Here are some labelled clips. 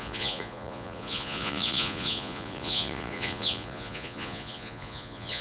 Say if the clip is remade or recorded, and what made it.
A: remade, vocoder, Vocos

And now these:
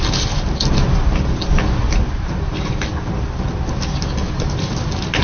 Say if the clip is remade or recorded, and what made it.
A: recorded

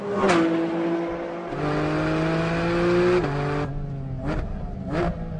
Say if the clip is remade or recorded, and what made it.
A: recorded